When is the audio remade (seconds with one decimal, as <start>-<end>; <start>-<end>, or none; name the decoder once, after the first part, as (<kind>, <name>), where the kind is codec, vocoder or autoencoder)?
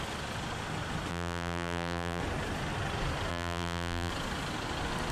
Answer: 1.1-2.2 (vocoder, BigVGAN v2); 3.3-4.1